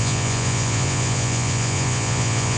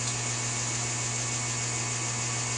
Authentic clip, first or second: second